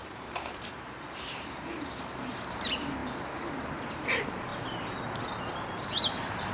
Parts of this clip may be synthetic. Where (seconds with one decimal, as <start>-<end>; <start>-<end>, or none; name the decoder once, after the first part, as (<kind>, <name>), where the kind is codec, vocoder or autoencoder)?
0.0-2.6 (vocoder, BigVGAN v2); 4.5-5.0